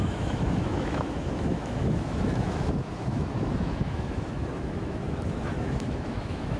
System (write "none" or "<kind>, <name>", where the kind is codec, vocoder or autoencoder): autoencoder, DAC-VAE